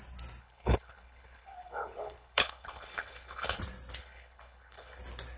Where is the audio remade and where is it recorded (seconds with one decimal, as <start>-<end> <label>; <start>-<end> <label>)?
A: 0.0-0.4 recorded; 0.4-3.6 remade; 3.6-4.0 recorded; 4.0-5.0 remade; 5.0-5.4 recorded